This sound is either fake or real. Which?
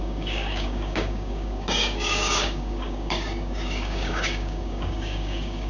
fake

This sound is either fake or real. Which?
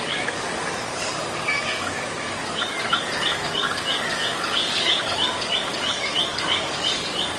fake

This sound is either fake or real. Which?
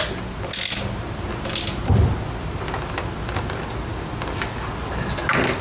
real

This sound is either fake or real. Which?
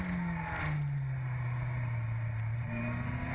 real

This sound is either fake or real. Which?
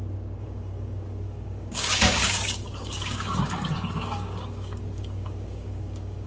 fake